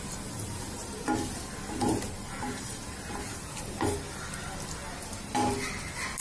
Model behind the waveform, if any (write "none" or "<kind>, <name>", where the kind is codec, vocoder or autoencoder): none